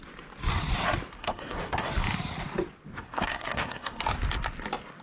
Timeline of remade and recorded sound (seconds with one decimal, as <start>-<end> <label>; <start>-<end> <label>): 0.0-1.2 recorded; 1.2-1.9 remade; 1.9-2.9 recorded; 2.9-4.0 remade; 4.0-5.0 recorded